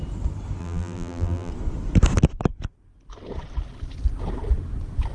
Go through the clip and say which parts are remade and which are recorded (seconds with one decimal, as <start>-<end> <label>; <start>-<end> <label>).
0.0-0.6 recorded; 0.6-1.5 remade; 1.5-5.1 recorded